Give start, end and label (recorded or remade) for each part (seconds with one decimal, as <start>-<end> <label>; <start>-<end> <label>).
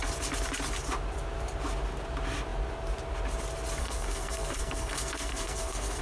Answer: 0.0-3.8 recorded; 3.8-6.0 remade